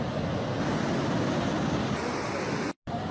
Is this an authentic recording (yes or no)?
yes